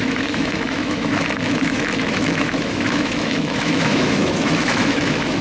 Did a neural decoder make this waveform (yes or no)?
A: yes